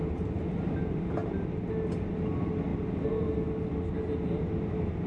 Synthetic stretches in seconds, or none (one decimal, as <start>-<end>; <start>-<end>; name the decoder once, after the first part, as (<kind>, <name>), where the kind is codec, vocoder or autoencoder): none